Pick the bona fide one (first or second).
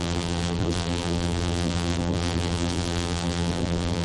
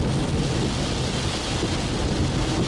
second